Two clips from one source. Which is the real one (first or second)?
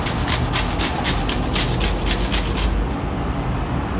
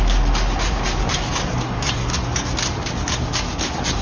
first